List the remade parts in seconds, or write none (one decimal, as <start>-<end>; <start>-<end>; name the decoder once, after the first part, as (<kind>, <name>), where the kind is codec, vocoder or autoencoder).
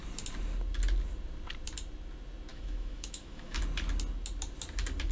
2.5-3.6 (autoencoder, DAC-VAE)